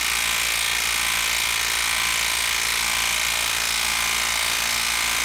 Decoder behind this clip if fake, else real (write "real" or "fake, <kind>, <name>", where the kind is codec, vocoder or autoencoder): real